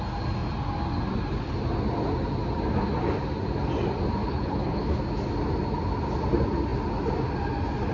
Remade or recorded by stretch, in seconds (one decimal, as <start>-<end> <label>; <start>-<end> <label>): 0.0-4.2 recorded; 4.2-5.0 remade; 5.0-7.9 recorded